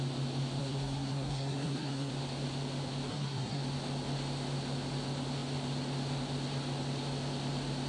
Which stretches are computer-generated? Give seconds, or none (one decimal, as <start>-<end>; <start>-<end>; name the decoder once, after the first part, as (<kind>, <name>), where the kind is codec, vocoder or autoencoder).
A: 0.6-2.1 (codec, SNAC); 3.1-3.6